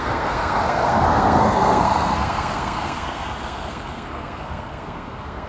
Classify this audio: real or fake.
fake